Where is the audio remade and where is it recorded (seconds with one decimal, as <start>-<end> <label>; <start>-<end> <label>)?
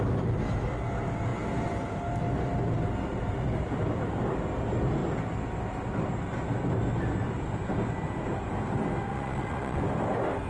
0.0-9.1 recorded; 9.1-9.8 remade; 9.8-10.5 recorded